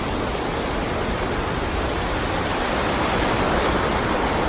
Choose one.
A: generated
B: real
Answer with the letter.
B